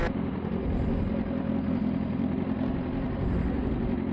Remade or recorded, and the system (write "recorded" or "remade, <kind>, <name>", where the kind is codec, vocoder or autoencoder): recorded